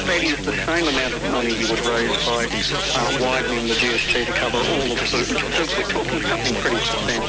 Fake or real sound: real